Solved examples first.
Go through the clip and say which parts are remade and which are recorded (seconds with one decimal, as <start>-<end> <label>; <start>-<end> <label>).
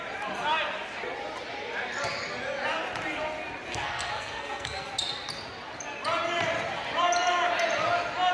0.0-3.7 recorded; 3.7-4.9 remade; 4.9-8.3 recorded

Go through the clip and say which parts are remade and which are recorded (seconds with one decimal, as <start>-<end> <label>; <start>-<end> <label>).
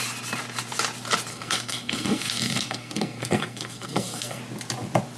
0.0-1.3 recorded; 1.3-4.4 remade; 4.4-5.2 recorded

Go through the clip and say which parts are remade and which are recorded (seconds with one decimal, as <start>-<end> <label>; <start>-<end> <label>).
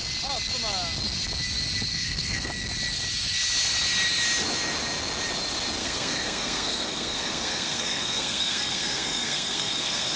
0.0-1.9 recorded; 1.9-2.5 remade; 2.5-5.8 recorded; 5.8-10.2 remade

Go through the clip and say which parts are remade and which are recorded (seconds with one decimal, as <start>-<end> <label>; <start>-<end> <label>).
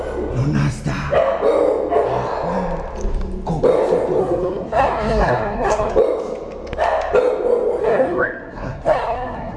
0.0-4.2 recorded; 4.2-5.9 remade; 5.9-7.8 recorded; 7.8-9.6 remade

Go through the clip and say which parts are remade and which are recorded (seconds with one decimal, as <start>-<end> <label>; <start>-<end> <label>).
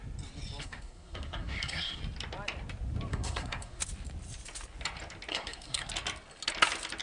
0.0-0.6 recorded; 0.6-2.0 remade; 2.0-3.1 recorded; 3.1-3.8 remade; 3.8-5.3 recorded; 5.3-5.9 remade; 5.9-7.0 recorded